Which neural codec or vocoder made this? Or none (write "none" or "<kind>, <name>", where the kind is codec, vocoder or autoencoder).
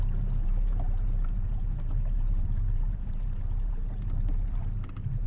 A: vocoder, BigVGAN v2